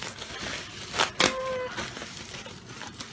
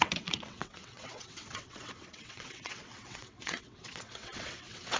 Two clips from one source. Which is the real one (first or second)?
first